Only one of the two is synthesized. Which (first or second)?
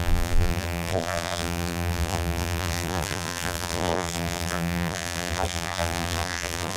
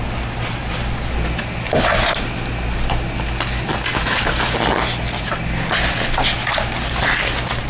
first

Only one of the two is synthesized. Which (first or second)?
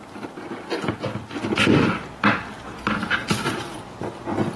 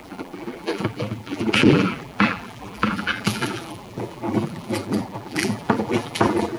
second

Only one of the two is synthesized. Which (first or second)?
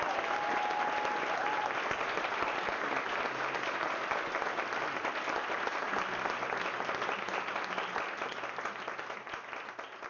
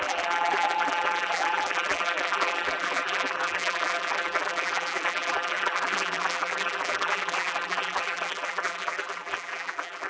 second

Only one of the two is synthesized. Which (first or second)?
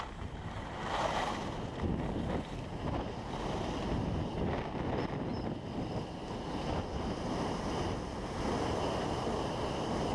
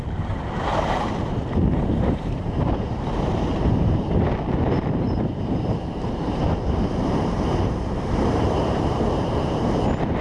second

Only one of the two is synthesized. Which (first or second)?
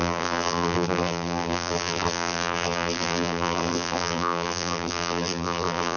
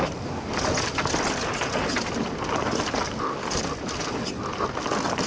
first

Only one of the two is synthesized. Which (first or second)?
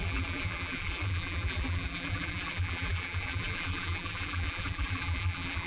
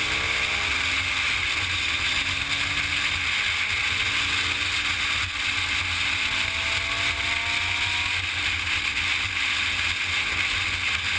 first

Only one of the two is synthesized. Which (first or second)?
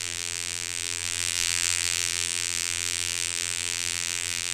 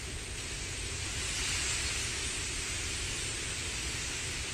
first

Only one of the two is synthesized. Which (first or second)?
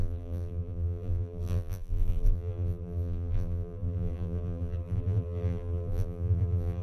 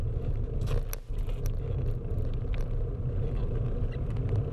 first